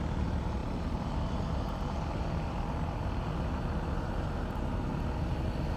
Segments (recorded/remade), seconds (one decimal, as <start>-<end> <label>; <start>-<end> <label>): 0.0-5.8 recorded